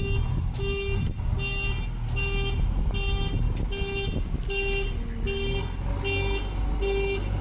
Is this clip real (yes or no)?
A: yes